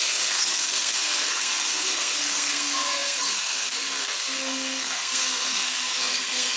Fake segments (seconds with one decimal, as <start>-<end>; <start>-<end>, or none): 0.0-6.6